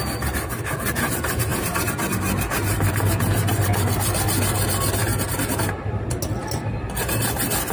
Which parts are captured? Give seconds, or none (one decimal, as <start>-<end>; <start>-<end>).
0.0-7.7